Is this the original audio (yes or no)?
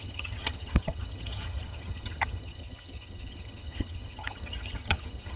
no